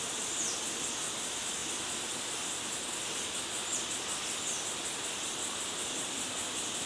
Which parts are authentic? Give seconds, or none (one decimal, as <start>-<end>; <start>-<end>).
0.0-6.9